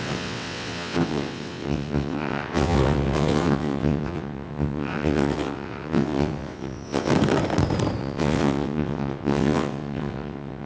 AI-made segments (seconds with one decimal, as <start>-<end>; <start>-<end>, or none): 0.0-7.1; 8.0-10.7

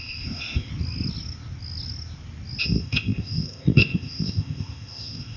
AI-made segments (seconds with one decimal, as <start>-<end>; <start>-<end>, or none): 0.0-0.7; 2.6-5.4

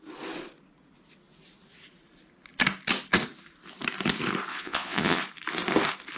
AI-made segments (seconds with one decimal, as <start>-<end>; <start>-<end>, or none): 4.5-5.2

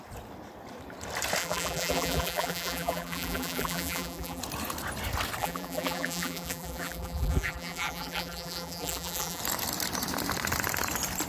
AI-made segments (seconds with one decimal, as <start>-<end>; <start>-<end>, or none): 1.4-4.4; 5.4-9.4

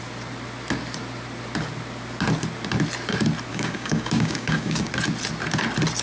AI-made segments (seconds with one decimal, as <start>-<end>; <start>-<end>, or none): 3.5-4.9

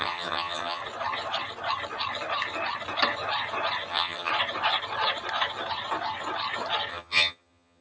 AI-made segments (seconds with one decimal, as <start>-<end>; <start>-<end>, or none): 0.0-0.8; 3.9-4.3; 6.9-7.8

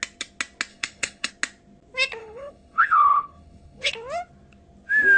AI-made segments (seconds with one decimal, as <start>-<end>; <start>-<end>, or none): 0.7-1.3; 2.2-3.9